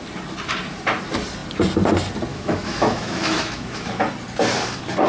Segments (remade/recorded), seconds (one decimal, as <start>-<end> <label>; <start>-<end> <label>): 0.0-2.3 recorded; 2.3-4.0 remade; 4.0-5.1 recorded